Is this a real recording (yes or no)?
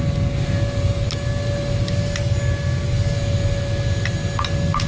yes